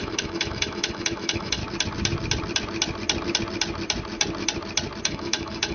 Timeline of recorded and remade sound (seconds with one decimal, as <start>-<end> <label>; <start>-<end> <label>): 0.0-1.6 remade; 1.6-5.0 recorded; 5.0-5.7 remade